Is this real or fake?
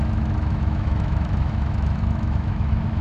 fake